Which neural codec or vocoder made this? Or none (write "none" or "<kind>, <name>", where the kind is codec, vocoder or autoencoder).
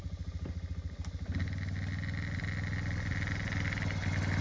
none